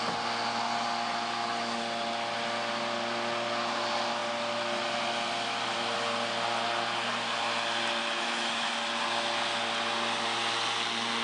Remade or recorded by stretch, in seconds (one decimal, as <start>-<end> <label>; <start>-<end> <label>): 0.0-8.0 recorded; 8.0-8.7 remade; 8.7-11.2 recorded